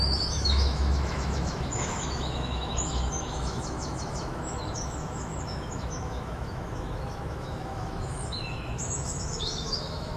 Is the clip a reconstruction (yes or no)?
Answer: yes